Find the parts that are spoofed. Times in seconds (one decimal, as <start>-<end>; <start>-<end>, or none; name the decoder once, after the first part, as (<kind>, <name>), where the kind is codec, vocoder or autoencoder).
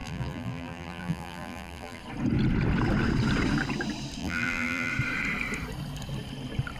0.0-2.0 (vocoder, BigVGAN v2); 4.2-4.9